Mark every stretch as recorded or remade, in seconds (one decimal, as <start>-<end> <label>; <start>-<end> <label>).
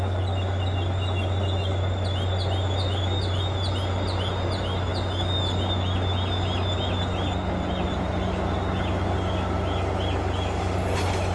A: 0.0-11.3 recorded